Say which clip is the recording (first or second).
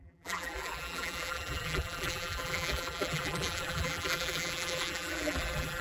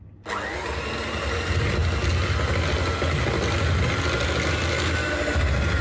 second